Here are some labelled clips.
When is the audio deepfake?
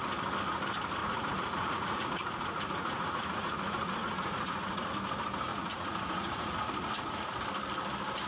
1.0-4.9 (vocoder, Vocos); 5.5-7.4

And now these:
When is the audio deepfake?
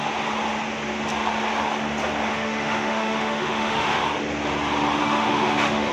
2.3-4.0 (autoencoder, DAC-VAE); 5.0-5.9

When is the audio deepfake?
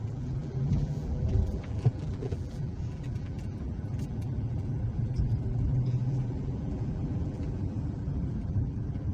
0.0-9.1 (vocoder, BigVGAN v2)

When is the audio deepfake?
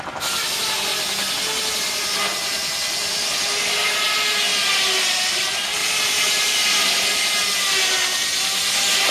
none